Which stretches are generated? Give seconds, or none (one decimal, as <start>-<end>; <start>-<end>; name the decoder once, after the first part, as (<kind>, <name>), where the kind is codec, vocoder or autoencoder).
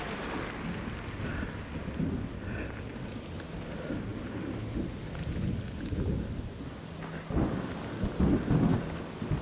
none